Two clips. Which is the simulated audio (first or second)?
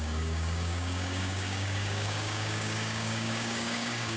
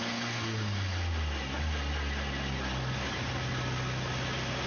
first